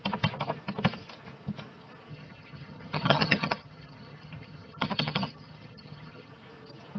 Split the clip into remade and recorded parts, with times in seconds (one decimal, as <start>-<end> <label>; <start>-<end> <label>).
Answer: 0.0-2.1 recorded; 2.1-6.3 remade; 6.3-7.0 recorded